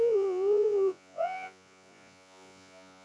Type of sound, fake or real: fake